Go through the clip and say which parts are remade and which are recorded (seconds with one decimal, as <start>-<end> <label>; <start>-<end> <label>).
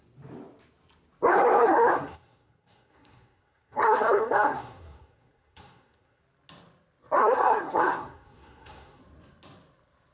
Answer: 0.0-1.3 recorded; 1.3-6.2 remade; 6.2-7.2 recorded; 7.2-9.0 remade; 9.0-10.1 recorded